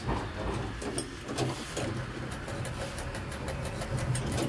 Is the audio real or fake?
real